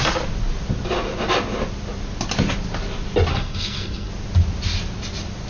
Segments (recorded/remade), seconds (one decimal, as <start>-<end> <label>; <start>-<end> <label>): 0.0-3.3 recorded; 3.3-4.1 remade; 4.1-5.5 recorded